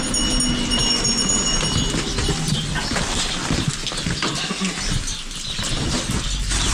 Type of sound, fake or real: real